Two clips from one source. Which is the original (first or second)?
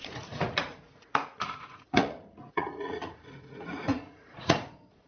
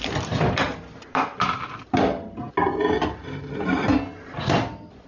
second